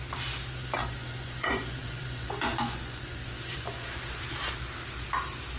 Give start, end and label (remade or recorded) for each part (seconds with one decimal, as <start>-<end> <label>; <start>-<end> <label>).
0.0-0.8 recorded; 0.8-4.2 remade; 4.2-5.6 recorded